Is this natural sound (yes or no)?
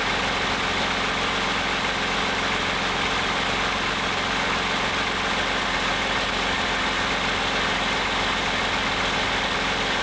yes